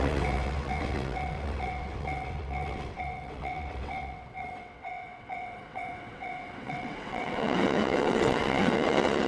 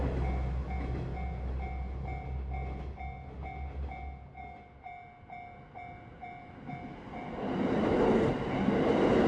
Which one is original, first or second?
second